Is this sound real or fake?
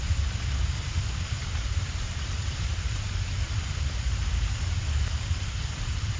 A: fake